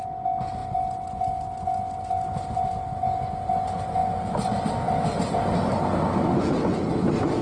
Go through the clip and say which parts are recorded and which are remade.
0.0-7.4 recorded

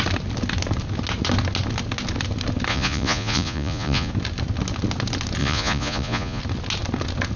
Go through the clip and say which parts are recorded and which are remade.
0.0-2.7 recorded; 2.7-4.1 remade; 4.1-5.4 recorded; 5.4-6.4 remade; 6.4-7.4 recorded

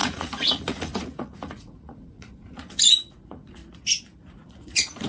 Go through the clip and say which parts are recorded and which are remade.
0.0-3.6 remade; 3.6-4.2 recorded; 4.2-5.1 remade

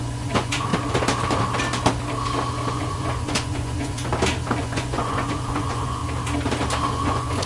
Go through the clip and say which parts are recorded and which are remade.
0.0-0.7 remade; 0.7-2.7 recorded; 2.7-4.1 remade; 4.1-4.6 recorded; 4.6-6.0 remade; 6.0-6.9 recorded; 6.9-7.5 remade

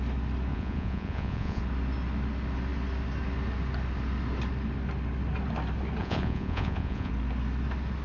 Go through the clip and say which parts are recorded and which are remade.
0.0-0.5 recorded; 0.5-1.6 remade; 1.6-6.0 recorded; 6.0-7.1 remade; 7.1-8.0 recorded

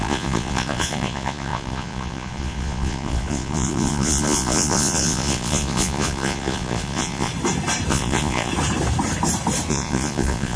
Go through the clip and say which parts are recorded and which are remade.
0.0-7.3 remade; 7.3-7.9 recorded; 7.9-8.5 remade; 8.5-9.7 recorded; 9.7-10.6 remade

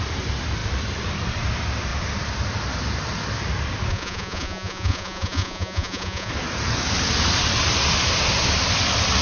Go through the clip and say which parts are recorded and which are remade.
0.0-3.9 recorded; 3.9-6.3 remade; 6.3-9.2 recorded